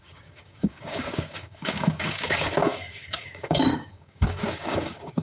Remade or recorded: remade